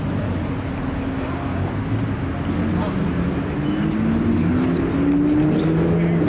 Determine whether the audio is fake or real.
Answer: real